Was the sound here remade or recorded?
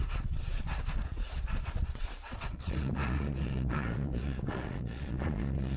remade